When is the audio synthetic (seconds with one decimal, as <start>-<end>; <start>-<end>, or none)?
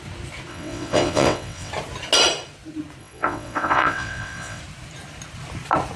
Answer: 0.5-1.7; 3.0-4.6